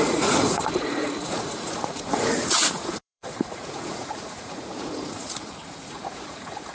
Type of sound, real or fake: fake